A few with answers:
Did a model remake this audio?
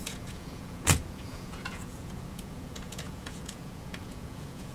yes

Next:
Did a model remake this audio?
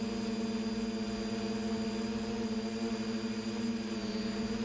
no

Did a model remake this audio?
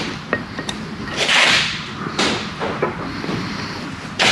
yes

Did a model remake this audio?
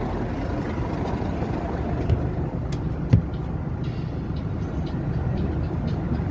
no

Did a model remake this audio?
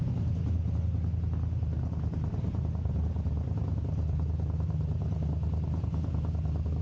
no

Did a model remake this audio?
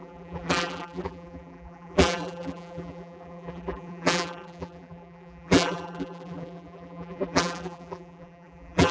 yes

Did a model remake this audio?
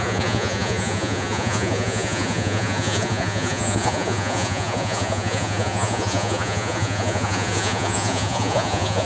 yes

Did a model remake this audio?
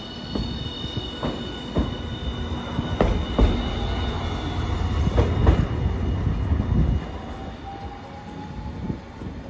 no